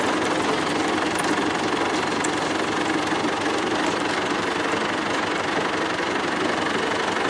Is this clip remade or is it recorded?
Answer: recorded